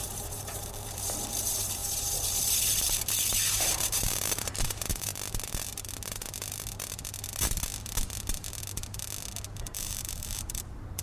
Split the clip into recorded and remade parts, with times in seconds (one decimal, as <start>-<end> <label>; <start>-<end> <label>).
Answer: 0.0-5.1 remade; 5.1-9.5 recorded; 9.5-11.0 remade